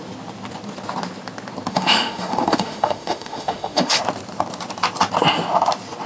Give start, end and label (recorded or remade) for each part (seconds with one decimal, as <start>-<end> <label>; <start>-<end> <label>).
0.0-1.7 recorded; 1.7-4.0 remade; 4.0-6.1 recorded